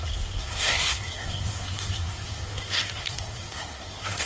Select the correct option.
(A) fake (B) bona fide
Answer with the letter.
A